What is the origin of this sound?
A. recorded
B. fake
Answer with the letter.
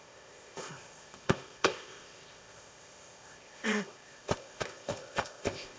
B